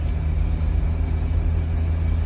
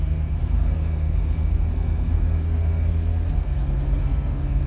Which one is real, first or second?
first